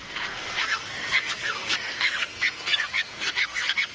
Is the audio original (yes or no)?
no